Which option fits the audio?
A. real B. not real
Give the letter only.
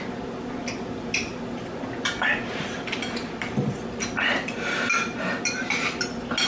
A